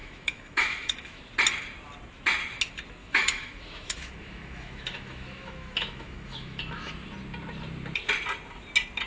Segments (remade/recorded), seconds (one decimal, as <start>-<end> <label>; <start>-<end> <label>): 0.0-1.2 remade; 1.2-3.0 recorded; 3.0-6.9 remade; 6.9-9.1 recorded